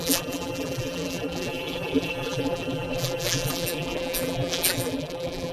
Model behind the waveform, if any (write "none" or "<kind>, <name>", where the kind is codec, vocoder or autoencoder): vocoder, BigVGAN v2